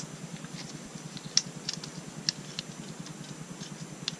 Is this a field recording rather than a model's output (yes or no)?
yes